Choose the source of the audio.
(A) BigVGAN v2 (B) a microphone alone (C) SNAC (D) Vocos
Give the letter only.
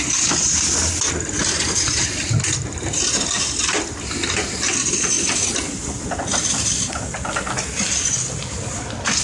B